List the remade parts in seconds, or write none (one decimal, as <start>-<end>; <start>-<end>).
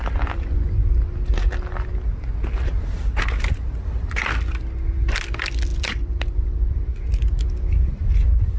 none